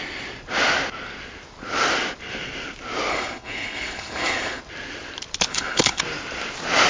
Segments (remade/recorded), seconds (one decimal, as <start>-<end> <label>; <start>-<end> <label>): 0.0-3.1 recorded; 3.1-4.6 remade; 4.6-5.5 recorded; 5.5-6.0 remade; 6.0-6.9 recorded